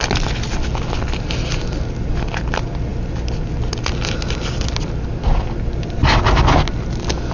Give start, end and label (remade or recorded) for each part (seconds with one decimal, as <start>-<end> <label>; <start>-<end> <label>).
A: 0.0-7.3 recorded